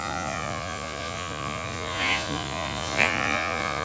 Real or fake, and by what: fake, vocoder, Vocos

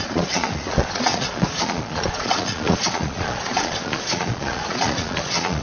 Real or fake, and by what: fake, vocoder, Vocos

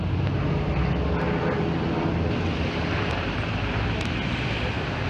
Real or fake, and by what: real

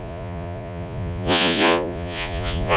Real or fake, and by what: fake, vocoder, Vocos